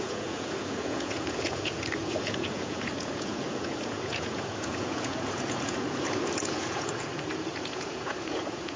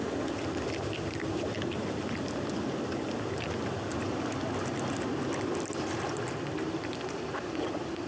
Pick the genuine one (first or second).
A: second